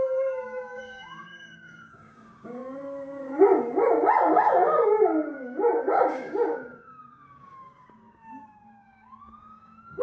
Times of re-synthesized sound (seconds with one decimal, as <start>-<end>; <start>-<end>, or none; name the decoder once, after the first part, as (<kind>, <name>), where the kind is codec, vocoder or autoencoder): 0.0-2.6 (codec, DAC); 4.3-10.0